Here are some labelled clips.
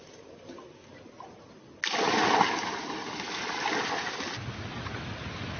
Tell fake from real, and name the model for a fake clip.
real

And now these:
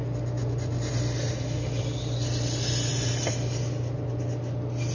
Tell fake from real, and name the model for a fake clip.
real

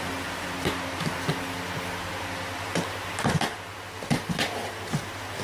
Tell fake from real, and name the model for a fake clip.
real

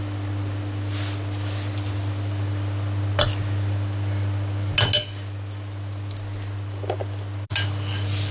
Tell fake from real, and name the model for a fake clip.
real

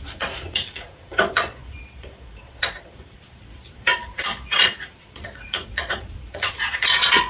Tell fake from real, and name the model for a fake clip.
fake, vocoder, Vocos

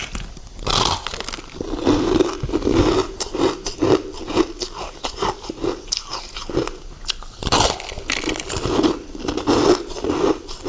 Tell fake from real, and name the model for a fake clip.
real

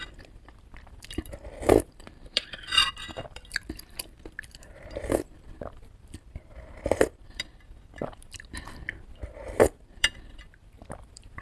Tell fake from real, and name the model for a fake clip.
fake, vocoder, BigVGAN v2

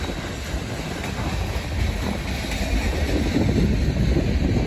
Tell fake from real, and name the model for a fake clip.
real